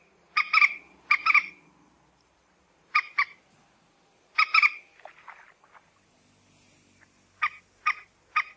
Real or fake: real